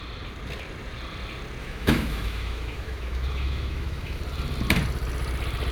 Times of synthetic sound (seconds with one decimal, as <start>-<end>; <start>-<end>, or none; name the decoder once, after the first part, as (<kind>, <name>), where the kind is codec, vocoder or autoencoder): 1.6-4.2 (autoencoder, DAC-VAE)